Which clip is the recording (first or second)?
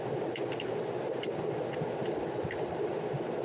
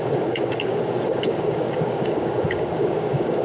first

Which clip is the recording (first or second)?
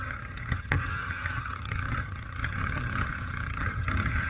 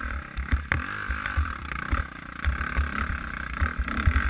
second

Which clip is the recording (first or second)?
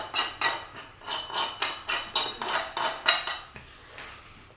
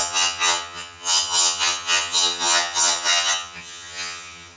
first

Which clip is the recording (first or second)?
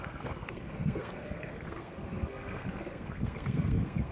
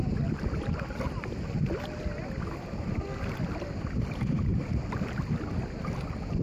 second